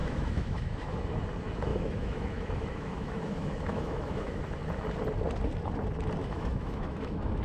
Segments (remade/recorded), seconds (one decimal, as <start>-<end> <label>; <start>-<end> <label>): 0.0-1.1 remade; 1.1-1.7 recorded; 1.7-4.4 remade; 4.4-6.2 recorded; 6.2-7.4 remade